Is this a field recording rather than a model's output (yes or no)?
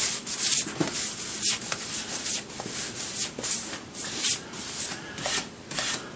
yes